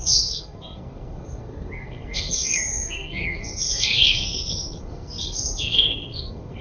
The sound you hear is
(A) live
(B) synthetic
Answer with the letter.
B